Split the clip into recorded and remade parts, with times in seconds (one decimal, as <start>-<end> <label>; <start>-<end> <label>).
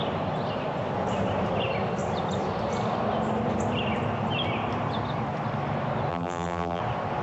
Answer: 0.0-6.1 recorded; 6.1-6.8 remade; 6.8-7.2 recorded